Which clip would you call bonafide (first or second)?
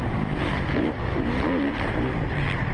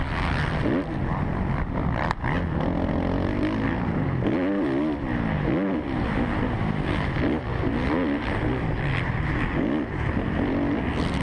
second